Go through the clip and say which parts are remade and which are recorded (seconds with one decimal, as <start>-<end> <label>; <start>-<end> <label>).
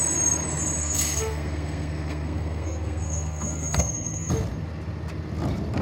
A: 0.0-0.8 recorded; 0.8-4.3 remade; 4.3-5.8 recorded